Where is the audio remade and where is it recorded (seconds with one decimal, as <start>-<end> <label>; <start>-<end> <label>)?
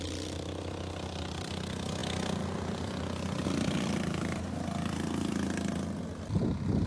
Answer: 0.0-6.9 recorded